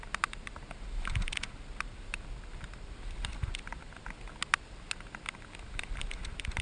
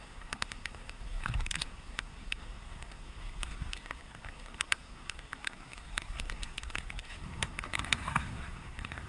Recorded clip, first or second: first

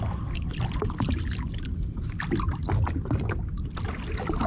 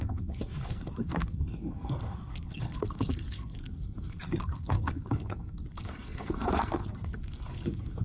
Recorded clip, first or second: first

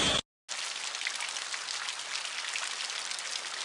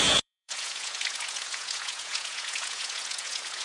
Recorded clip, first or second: first